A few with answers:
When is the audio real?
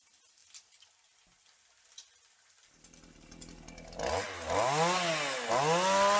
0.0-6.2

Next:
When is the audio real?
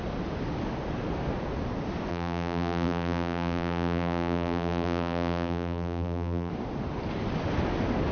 0.0-2.1; 6.5-8.1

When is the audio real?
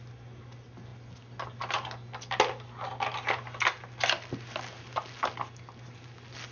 0.0-6.5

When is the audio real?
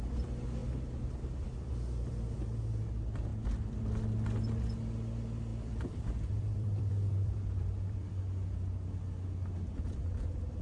0.0-3.3; 3.8-5.5; 8.2-10.6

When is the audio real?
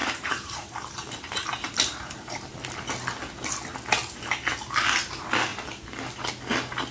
2.4-6.9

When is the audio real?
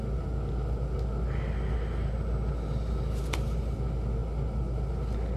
0.0-5.4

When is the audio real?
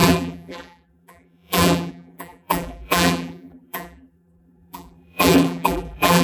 none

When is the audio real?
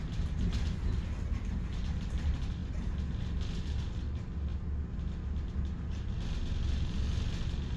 0.0-7.8